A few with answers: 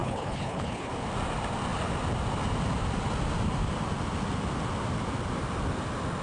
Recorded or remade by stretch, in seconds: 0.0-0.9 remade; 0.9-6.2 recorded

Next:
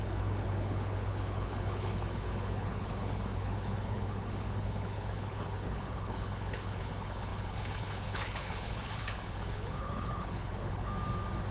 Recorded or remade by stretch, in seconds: 0.0-10.9 remade; 10.9-11.5 recorded

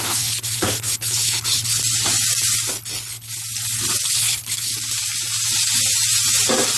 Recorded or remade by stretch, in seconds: 0.0-1.8 remade; 1.8-2.7 recorded; 2.7-3.3 remade; 3.3-4.1 recorded; 4.1-4.7 remade; 4.7-6.8 recorded

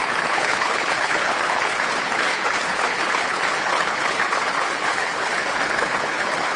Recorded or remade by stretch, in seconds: 0.0-6.6 remade

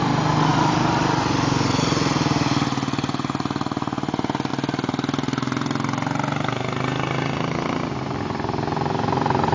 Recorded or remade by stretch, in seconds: 0.0-9.5 recorded

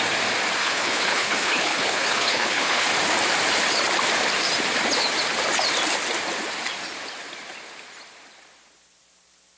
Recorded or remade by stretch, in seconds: 0.0-0.6 recorded; 0.6-2.9 remade; 2.9-9.6 recorded

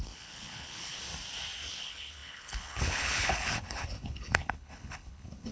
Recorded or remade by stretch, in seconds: 0.0-1.1 remade; 1.1-1.7 recorded; 1.7-5.5 remade

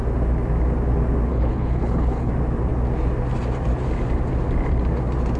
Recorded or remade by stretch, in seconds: 0.0-1.3 recorded; 1.3-2.3 remade; 2.3-5.4 recorded